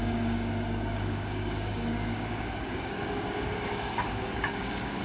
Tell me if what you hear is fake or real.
fake